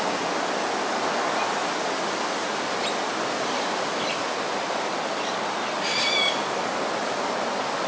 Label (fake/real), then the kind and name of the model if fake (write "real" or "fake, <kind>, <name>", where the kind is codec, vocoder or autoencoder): real